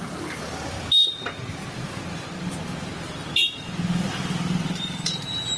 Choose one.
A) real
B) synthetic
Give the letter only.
A